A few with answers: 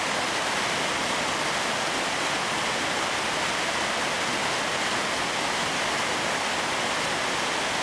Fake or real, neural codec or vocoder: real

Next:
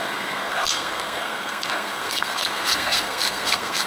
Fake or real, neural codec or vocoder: fake, codec, SNAC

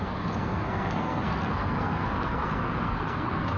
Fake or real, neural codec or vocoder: fake, codec, SNAC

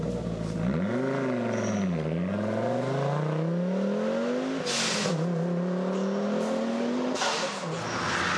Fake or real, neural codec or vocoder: real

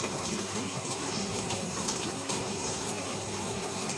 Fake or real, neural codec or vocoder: fake, codec, SNAC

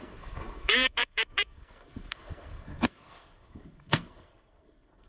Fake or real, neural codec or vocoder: fake, codec, SNAC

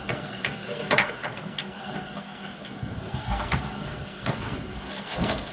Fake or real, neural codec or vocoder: fake, codec, SNAC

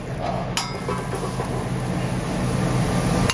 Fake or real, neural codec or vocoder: real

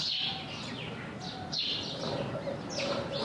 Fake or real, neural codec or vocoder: real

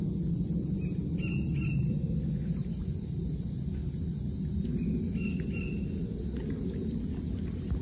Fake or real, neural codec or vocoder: real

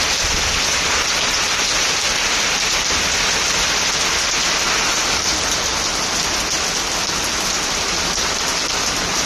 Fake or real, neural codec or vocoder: real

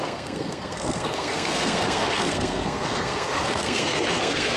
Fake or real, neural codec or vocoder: fake, codec, SNAC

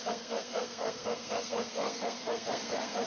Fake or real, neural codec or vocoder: fake, codec, SNAC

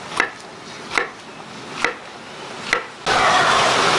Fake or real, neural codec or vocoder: real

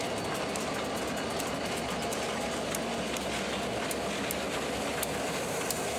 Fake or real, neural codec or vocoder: real